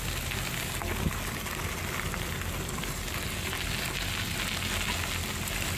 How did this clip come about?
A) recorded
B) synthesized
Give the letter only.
A